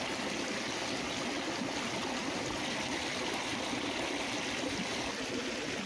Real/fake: real